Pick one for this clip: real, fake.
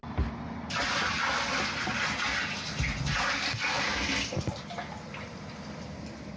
real